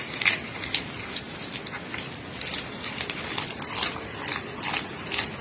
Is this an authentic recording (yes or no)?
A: yes